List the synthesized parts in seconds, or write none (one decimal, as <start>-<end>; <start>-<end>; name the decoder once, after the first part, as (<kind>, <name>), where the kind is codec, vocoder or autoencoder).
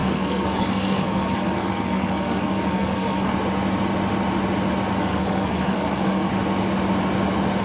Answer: 0.0-3.3 (codec, SNAC); 5.0-6.3